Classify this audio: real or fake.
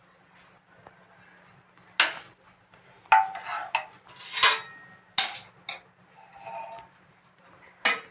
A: real